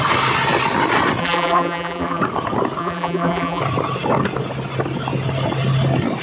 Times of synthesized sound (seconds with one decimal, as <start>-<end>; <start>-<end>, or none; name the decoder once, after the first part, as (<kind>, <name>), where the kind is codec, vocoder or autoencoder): 1.2-2.2 (vocoder, BigVGAN v2); 2.8-3.6